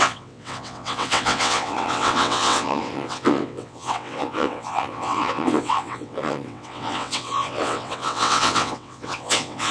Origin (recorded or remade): remade